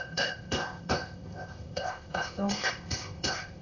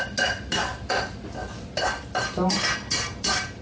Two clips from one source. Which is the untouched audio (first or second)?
second